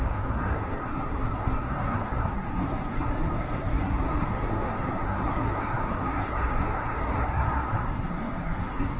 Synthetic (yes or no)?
yes